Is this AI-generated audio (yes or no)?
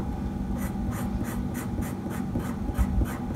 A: no